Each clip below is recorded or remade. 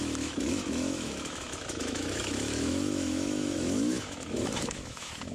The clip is remade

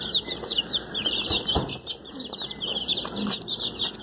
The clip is remade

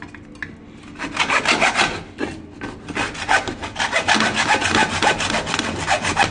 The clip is recorded